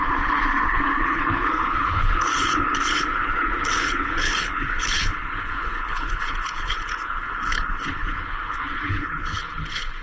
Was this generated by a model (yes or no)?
yes